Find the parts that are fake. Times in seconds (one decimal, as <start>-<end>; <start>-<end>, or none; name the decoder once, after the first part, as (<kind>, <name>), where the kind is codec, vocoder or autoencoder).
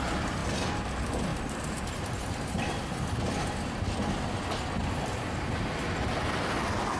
1.3-2.8 (vocoder, BigVGAN v2); 4.8-5.7